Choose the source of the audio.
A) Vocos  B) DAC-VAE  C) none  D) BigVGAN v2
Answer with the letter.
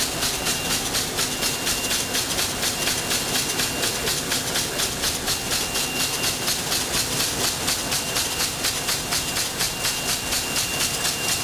C